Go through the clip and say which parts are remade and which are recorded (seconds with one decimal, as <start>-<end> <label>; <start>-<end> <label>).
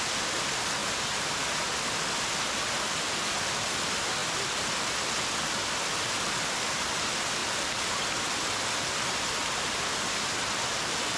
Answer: 0.0-11.2 recorded